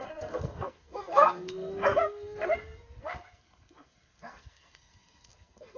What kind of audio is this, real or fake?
fake